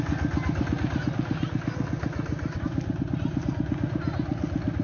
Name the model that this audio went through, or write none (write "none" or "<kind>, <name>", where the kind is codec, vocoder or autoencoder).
none